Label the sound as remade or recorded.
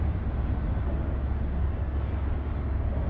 recorded